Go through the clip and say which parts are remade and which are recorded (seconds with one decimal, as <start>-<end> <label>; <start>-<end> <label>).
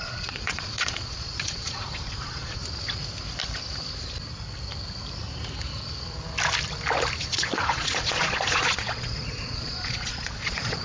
0.0-2.6 remade; 2.6-7.2 recorded; 7.2-10.8 remade